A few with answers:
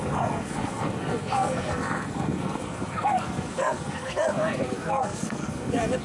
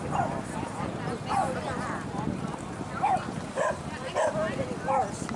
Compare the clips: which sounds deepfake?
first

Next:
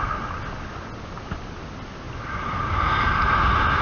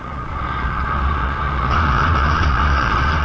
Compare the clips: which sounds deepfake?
second